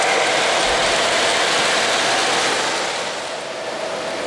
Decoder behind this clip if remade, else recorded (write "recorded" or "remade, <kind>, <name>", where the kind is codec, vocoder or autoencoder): recorded